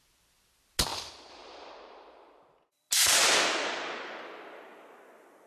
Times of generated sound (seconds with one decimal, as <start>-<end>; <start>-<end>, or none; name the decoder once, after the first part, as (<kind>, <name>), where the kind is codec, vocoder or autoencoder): none